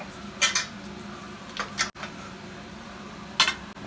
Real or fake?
real